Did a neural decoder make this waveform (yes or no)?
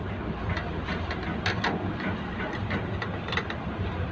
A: no